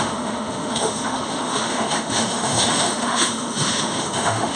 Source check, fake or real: fake